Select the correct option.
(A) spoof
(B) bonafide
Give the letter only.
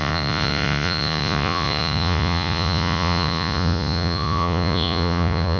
A